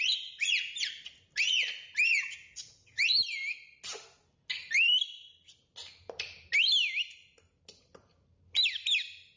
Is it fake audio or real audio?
real